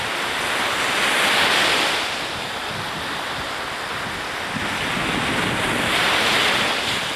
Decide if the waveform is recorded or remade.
recorded